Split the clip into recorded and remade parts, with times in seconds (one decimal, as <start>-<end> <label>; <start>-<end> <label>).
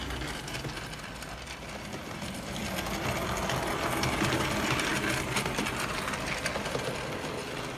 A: 0.0-7.8 recorded